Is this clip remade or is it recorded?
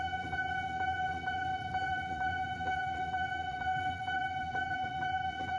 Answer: remade